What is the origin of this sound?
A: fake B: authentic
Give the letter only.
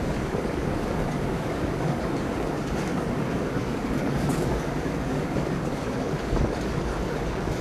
A